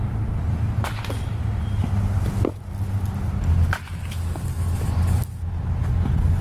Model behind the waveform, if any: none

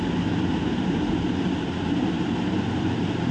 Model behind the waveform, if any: none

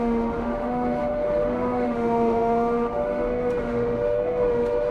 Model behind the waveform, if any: autoencoder, DAC-VAE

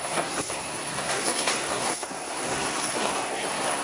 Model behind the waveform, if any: codec, SNAC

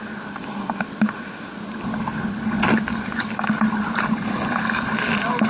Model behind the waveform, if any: none